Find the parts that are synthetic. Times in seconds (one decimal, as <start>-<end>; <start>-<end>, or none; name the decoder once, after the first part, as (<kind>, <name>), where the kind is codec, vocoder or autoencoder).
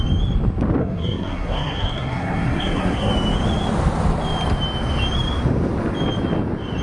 0.8-3.1 (codec, SNAC)